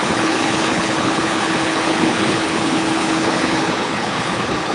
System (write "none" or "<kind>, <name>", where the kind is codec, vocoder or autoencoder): codec, HILCodec